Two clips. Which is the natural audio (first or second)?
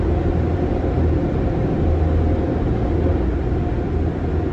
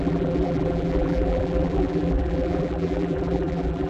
first